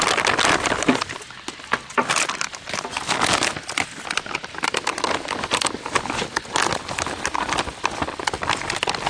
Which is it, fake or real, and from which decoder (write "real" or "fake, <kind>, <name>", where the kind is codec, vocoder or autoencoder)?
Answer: real